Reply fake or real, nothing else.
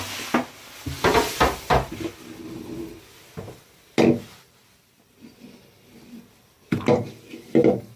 real